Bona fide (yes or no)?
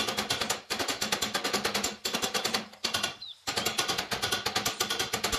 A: yes